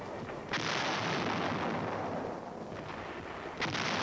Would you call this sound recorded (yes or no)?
yes